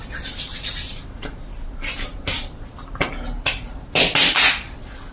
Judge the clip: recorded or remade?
recorded